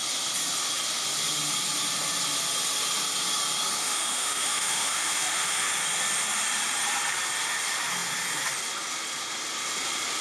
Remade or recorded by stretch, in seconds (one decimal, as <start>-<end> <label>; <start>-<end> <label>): 0.0-3.8 recorded; 3.8-5.7 remade; 5.7-10.2 recorded